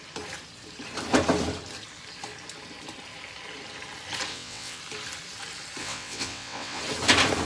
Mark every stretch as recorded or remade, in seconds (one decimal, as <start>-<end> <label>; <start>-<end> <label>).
0.0-4.3 recorded; 4.3-4.8 remade; 4.8-5.8 recorded; 5.8-6.8 remade; 6.8-7.4 recorded